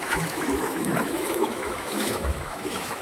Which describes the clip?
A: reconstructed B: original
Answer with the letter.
A